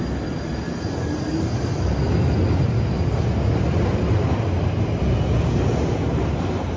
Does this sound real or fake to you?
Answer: real